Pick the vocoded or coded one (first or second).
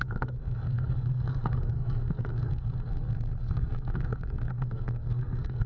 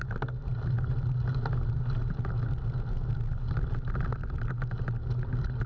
first